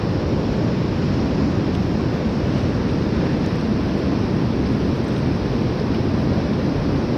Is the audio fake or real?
real